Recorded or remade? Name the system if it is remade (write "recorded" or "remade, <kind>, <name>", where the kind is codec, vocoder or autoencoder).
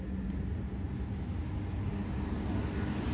recorded